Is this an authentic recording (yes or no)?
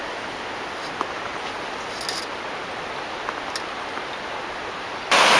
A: yes